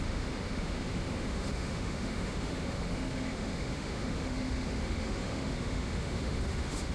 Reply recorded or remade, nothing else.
remade